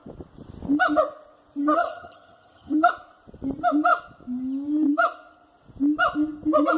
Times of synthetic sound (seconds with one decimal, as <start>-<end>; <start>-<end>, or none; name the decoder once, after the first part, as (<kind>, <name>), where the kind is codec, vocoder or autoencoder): 1.6-2.9 (vocoder, HiFi-GAN)